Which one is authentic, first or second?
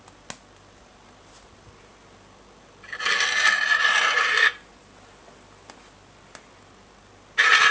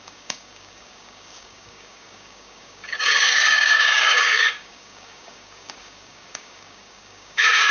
first